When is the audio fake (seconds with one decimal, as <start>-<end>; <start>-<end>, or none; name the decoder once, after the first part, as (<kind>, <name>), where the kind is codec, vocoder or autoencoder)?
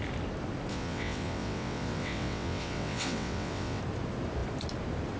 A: 0.7-3.8 (vocoder, WaveNeXt)